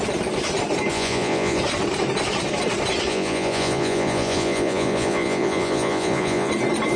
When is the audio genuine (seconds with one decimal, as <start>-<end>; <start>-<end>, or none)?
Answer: 0.0-0.9; 1.6-3.1; 6.5-7.0